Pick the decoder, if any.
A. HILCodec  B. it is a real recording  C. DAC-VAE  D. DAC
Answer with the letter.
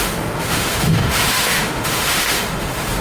C